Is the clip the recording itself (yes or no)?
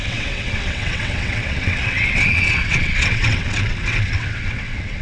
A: no